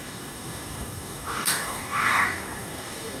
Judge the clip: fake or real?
fake